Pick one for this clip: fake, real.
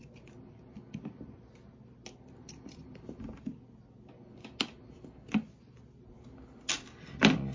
real